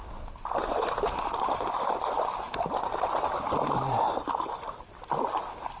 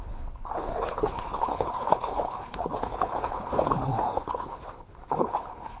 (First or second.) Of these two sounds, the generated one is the second